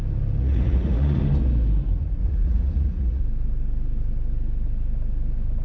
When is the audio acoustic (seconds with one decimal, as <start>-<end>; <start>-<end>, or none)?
0.0-0.4; 1.2-2.2; 3.2-5.6